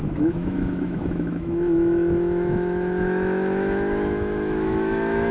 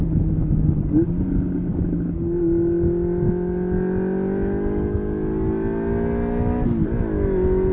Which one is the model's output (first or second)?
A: first